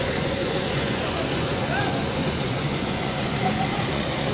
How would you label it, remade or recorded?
remade